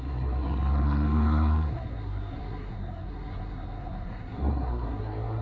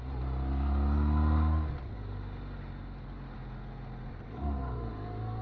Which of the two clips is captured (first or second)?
second